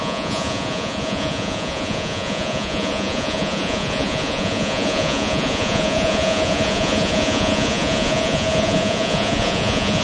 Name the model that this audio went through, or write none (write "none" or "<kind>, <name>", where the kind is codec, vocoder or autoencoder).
vocoder, Vocos